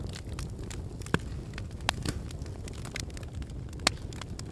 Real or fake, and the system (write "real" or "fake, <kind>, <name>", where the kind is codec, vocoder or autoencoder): real